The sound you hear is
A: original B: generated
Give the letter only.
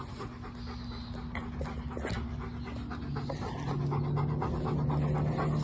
A